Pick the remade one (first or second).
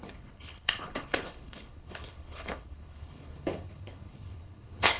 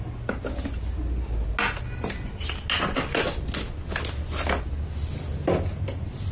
first